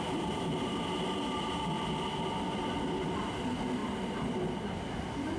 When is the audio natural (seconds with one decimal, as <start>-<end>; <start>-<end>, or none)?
0.0-5.4